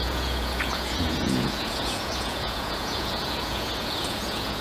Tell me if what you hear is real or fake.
fake